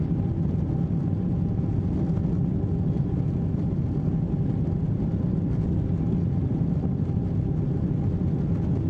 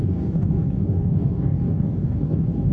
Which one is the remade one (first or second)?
second